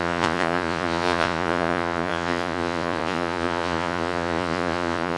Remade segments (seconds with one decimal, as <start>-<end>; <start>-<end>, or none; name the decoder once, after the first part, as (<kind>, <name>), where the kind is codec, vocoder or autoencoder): 0.0-5.2 (vocoder, Vocos)